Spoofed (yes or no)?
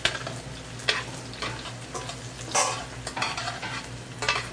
no